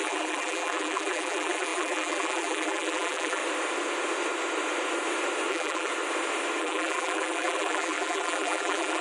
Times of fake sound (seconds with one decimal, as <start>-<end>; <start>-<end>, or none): 0.0-3.4; 5.5-5.9; 6.6-9.0